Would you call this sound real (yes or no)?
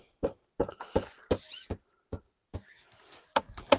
yes